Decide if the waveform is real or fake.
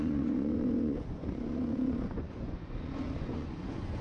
fake